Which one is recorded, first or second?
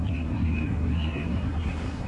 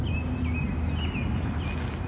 second